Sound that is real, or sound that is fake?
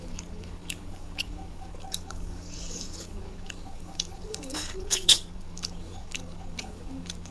fake